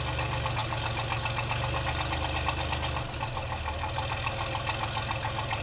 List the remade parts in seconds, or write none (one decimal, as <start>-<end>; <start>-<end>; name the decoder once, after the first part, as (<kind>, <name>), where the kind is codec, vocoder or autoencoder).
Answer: none